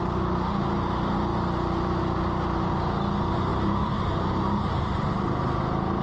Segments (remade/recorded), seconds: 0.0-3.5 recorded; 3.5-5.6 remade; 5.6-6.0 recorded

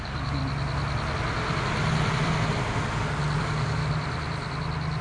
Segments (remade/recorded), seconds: 0.0-0.4 remade; 0.4-3.4 recorded; 3.4-3.8 remade; 3.8-5.0 recorded

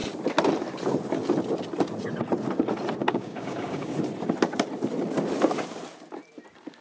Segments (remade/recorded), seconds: 0.0-3.0 recorded; 3.0-3.9 remade; 3.9-6.8 recorded

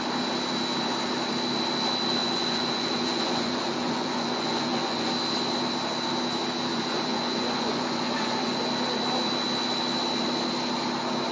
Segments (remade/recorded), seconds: 0.0-2.2 recorded; 2.2-5.1 remade; 5.1-6.7 recorded; 6.7-8.6 remade; 8.6-11.3 recorded

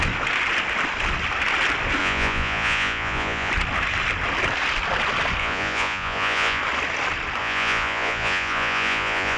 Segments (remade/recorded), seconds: 0.0-2.0 recorded; 2.0-3.5 remade; 3.5-5.4 recorded; 5.4-6.6 remade; 6.6-7.4 recorded; 7.4-9.4 remade

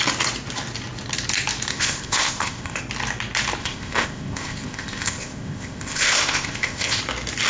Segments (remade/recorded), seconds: 0.0-1.7 recorded; 1.7-2.8 remade; 2.8-3.6 recorded; 3.6-7.0 remade; 7.0-7.5 recorded

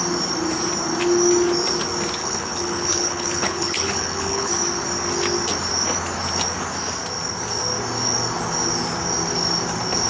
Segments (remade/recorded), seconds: 0.0-2.2 recorded; 2.2-4.5 remade; 4.5-10.1 recorded

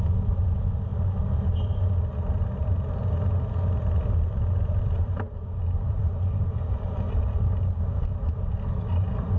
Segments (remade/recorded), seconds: 0.0-9.4 recorded